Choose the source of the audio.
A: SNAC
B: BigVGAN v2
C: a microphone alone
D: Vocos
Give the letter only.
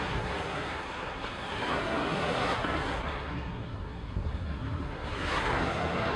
A